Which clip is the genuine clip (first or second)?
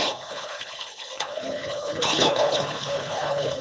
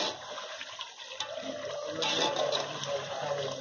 second